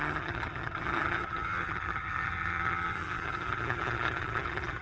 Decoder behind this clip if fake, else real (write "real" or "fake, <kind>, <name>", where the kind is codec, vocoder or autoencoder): fake, vocoder, HiFi-GAN